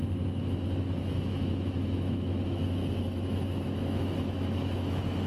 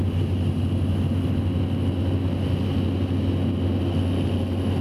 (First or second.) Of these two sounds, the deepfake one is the first